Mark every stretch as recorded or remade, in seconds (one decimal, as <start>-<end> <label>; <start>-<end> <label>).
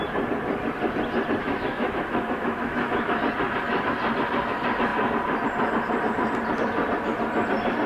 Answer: 0.0-1.4 recorded; 1.4-3.1 remade; 3.1-7.9 recorded